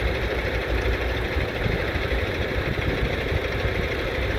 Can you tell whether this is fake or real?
fake